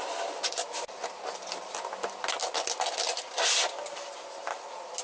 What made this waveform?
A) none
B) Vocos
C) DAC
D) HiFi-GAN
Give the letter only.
A